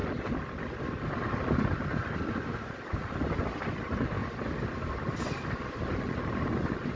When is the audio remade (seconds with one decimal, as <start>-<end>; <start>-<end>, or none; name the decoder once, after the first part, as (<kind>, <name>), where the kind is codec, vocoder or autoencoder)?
none